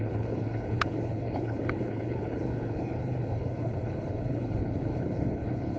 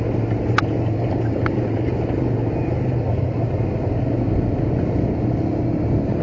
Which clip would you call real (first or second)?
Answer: second